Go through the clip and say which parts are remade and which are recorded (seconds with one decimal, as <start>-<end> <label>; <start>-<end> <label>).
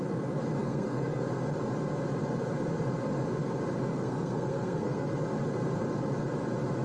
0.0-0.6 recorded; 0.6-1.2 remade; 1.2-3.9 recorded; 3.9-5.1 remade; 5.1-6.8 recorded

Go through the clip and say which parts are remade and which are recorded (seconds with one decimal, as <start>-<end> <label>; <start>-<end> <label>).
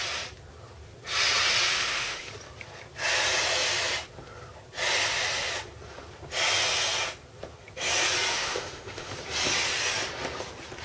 0.0-1.7 recorded; 1.7-2.3 remade; 2.3-8.3 recorded; 8.3-9.1 remade; 9.1-10.8 recorded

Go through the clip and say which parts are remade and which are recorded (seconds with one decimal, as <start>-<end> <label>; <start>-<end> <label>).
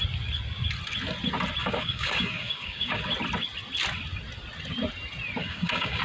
0.0-1.6 recorded; 1.6-3.0 remade; 3.0-5.4 recorded; 5.4-6.0 remade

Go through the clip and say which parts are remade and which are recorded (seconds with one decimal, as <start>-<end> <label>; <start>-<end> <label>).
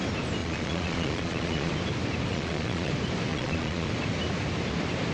0.0-0.4 recorded; 0.4-1.7 remade; 1.7-2.3 recorded; 2.3-2.9 remade; 2.9-3.3 recorded; 3.3-3.9 remade; 3.9-5.1 recorded